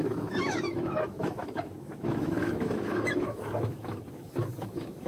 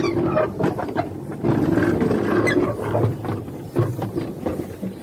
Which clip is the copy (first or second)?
first